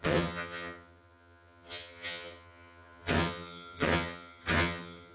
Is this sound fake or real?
fake